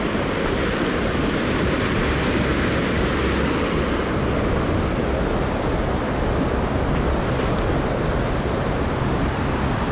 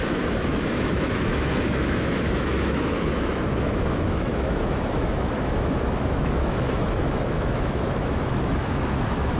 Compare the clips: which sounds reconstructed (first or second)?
second